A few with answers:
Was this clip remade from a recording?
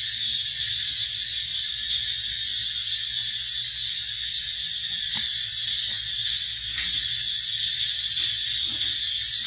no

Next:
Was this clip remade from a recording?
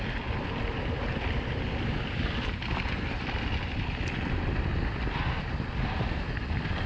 no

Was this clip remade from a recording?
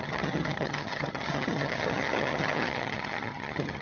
yes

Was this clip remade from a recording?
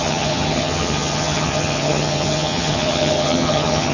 yes